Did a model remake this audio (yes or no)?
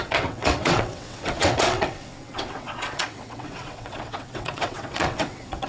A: yes